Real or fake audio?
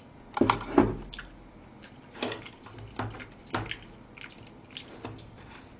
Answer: real